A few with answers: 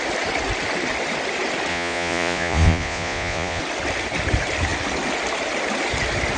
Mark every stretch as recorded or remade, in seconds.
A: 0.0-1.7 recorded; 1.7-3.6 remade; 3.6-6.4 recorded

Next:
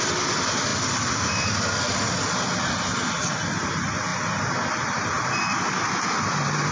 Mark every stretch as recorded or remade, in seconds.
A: 0.0-0.7 recorded; 0.7-1.7 remade; 1.7-6.7 recorded

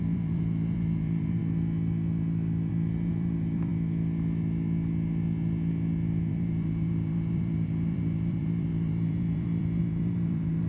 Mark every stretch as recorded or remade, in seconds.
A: 0.0-1.4 remade; 1.4-2.7 recorded; 2.7-3.7 remade; 3.7-6.3 recorded; 6.3-10.7 remade

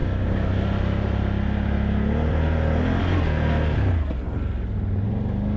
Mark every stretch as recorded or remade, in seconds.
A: 0.0-5.6 recorded